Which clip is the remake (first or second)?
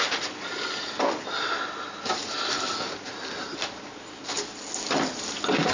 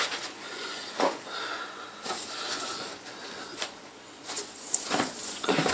second